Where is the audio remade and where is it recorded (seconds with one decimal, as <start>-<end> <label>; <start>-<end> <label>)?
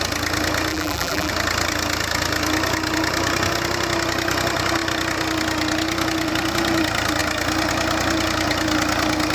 0.0-0.7 recorded; 0.7-1.3 remade; 1.3-9.3 recorded